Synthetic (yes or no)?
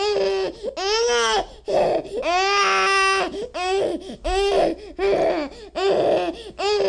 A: no